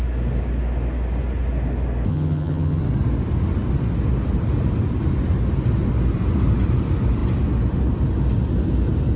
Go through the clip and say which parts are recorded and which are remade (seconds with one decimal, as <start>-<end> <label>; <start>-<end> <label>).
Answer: 0.0-2.1 recorded; 2.1-2.8 remade; 2.8-9.2 recorded